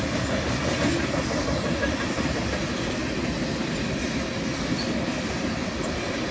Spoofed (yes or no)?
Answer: no